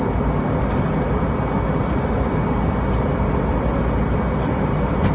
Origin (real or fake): real